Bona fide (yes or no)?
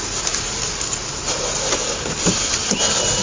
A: yes